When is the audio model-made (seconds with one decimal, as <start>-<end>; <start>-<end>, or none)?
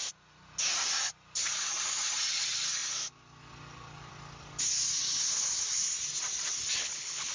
6.8-7.3